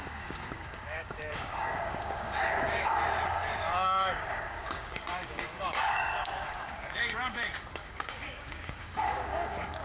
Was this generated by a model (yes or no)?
yes